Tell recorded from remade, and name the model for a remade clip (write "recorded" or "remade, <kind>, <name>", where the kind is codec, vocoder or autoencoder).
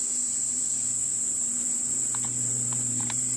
remade, vocoder, BigVGAN v2